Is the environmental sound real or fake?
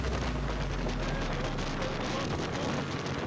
real